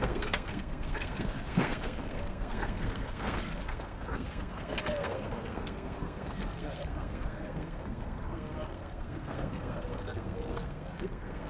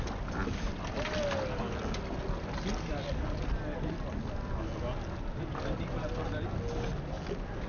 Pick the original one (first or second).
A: second